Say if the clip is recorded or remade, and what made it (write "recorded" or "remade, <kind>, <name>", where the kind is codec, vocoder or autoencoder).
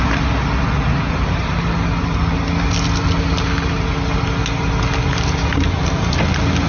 recorded